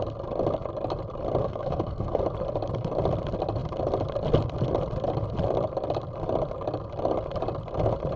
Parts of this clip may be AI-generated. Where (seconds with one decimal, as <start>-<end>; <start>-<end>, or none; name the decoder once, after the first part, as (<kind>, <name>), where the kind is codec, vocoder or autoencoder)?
1.4-2.2 (codec, SNAC)